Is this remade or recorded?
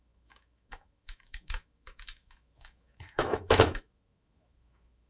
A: remade